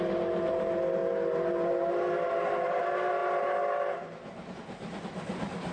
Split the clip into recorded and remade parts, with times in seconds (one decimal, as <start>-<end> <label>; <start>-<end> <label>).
0.0-5.7 recorded